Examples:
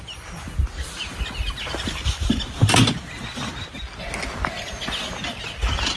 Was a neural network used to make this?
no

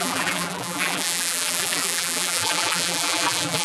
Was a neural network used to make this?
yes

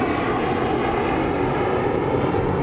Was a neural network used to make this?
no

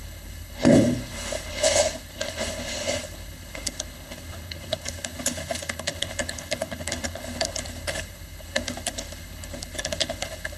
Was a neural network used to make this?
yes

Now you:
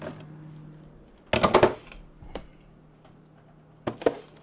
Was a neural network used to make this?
no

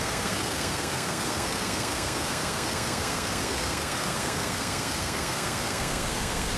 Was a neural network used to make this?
yes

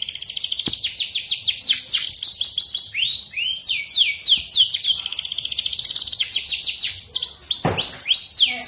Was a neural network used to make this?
no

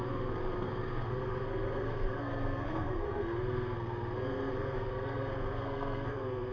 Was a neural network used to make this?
yes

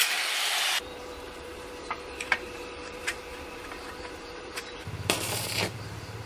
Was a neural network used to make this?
yes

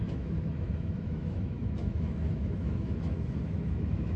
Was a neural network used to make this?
yes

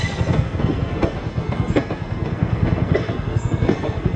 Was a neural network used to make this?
yes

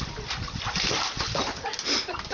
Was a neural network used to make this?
no